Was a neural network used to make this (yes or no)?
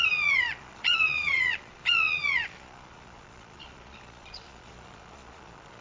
yes